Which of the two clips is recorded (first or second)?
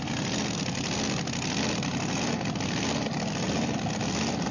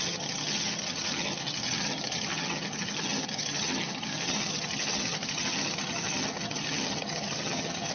first